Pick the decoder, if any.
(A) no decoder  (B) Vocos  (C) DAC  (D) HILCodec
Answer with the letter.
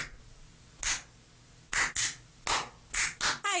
A